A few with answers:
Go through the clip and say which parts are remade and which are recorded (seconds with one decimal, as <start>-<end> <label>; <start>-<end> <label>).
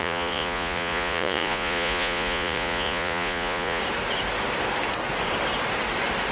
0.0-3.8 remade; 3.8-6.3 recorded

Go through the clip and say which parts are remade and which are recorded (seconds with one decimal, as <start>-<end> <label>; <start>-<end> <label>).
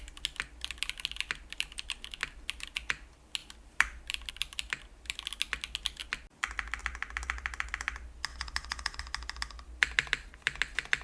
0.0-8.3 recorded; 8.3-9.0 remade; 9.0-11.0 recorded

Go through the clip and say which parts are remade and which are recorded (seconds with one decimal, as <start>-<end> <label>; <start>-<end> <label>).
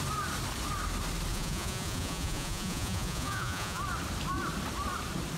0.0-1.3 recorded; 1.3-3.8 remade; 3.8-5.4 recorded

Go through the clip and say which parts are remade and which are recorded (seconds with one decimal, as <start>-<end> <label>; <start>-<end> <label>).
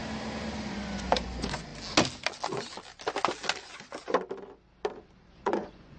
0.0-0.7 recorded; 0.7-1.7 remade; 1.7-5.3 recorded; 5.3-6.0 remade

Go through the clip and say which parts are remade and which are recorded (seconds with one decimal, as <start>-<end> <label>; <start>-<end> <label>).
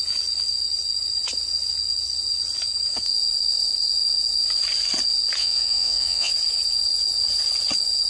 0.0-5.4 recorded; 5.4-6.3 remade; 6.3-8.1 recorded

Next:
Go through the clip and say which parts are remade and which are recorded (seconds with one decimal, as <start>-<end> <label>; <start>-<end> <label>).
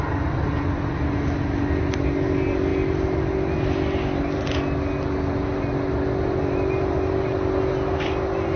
0.0-8.6 recorded